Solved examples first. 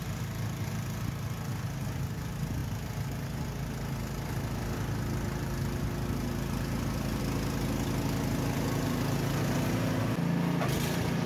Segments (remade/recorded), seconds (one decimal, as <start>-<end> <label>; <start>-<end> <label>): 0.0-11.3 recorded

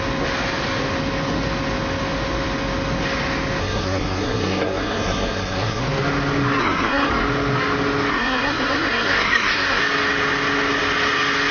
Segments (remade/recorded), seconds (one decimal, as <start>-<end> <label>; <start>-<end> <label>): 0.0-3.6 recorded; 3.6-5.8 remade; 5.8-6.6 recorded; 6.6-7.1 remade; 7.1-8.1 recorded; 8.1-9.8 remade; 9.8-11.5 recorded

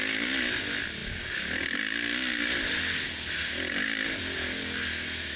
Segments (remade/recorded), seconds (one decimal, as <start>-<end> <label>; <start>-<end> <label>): 0.0-5.4 recorded

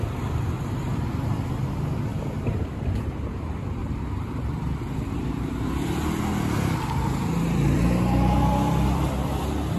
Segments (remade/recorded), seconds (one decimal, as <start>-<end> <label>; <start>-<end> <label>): 0.0-2.1 recorded; 2.1-3.0 remade; 3.0-3.8 recorded; 3.8-6.2 remade; 6.2-9.8 recorded

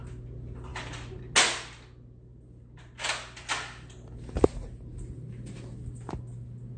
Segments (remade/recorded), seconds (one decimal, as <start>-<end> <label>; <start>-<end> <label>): 0.0-0.7 recorded; 0.7-1.2 remade; 1.2-6.8 recorded